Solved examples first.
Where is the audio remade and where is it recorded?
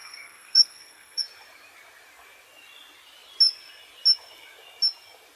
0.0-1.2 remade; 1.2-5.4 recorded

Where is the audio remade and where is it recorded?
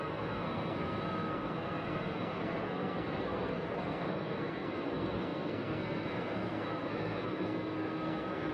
0.0-8.5 remade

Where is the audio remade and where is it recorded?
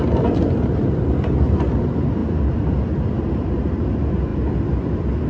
0.0-5.3 recorded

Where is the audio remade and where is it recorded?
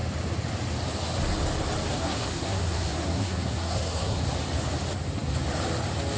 0.0-1.9 recorded; 1.9-4.2 remade; 4.2-6.2 recorded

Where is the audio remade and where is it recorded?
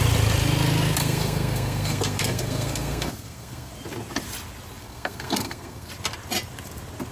0.0-1.0 recorded; 1.0-3.7 remade; 3.7-4.8 recorded; 4.8-5.9 remade; 5.9-7.1 recorded